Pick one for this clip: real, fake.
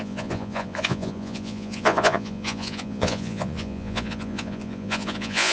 fake